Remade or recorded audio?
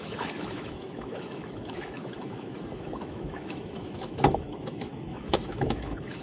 remade